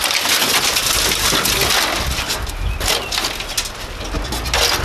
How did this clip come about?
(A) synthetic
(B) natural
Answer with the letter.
B